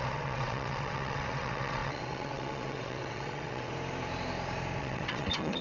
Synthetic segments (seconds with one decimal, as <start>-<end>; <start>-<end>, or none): 0.0-3.7; 4.8-5.6